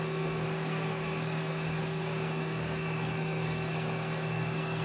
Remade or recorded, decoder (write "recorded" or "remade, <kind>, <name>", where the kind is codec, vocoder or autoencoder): remade, codec, SNAC